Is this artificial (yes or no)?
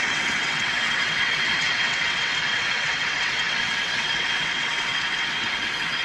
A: yes